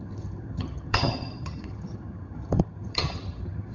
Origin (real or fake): fake